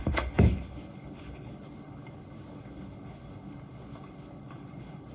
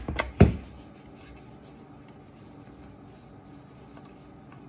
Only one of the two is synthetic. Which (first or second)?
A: first